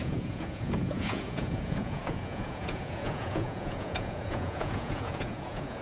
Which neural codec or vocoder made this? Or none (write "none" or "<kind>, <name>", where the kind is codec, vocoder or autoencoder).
vocoder, Vocos